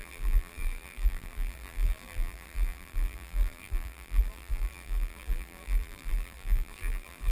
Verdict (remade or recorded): remade